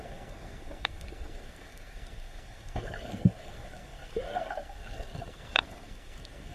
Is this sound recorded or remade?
remade